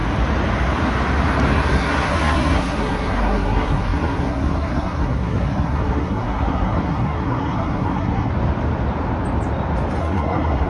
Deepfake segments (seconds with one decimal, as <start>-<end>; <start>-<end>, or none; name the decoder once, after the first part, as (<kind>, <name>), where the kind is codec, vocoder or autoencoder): 1.5-8.3 (codec, SNAC); 10.0-10.7